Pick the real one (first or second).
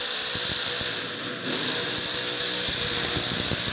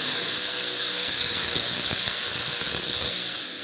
first